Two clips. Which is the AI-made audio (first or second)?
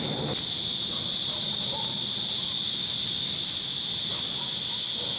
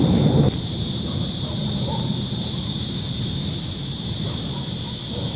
second